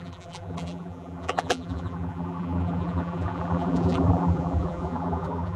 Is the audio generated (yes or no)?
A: yes